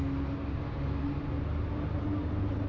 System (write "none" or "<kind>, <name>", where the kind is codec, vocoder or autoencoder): none